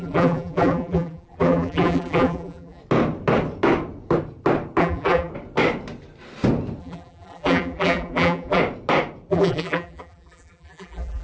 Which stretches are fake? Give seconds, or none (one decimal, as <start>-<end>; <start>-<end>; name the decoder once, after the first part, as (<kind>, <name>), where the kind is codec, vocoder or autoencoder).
0.0-2.8 (vocoder, BigVGAN v2); 4.8-5.3; 6.8-8.6; 9.3-11.2